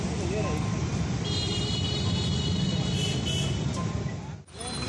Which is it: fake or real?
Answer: real